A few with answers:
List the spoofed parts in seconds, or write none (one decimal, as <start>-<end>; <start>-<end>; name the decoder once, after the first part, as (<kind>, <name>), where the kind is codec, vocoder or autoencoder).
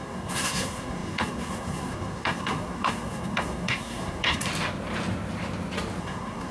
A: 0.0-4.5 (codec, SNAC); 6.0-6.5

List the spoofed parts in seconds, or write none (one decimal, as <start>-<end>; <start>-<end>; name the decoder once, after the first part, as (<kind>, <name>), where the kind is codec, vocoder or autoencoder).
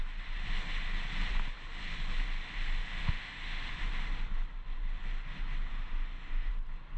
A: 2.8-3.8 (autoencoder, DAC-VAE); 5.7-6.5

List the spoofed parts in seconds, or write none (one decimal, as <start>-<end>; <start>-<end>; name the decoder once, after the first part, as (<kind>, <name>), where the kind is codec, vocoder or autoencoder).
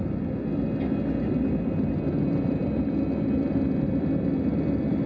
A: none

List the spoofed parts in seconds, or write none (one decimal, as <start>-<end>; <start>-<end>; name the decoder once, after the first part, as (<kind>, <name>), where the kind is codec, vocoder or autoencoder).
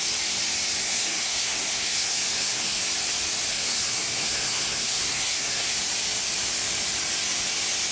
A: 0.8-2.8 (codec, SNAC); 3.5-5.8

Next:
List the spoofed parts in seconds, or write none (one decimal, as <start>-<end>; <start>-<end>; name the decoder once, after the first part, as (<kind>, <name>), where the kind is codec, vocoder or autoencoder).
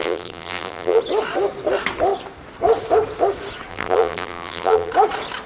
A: 0.0-1.0 (vocoder, BigVGAN v2); 3.7-4.9